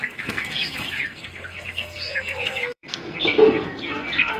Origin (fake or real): fake